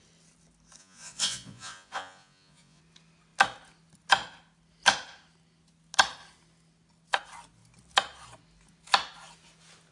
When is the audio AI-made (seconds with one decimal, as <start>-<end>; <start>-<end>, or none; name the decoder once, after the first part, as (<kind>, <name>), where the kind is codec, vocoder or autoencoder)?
0.8-2.8 (vocoder, Vocos)